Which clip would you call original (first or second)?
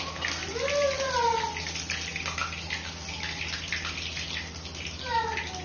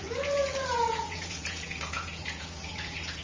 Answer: first